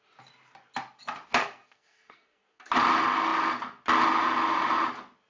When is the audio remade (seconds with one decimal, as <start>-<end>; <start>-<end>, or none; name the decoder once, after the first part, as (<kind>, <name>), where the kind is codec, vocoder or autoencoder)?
1.4-2.7 (codec, SNAC)